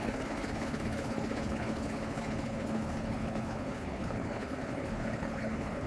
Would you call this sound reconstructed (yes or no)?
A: yes